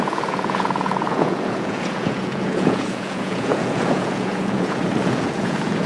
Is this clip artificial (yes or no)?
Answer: yes